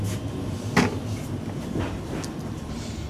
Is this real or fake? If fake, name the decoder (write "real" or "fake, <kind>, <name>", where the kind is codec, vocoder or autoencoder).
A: real